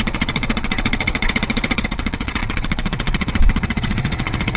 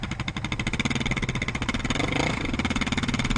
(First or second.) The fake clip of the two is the first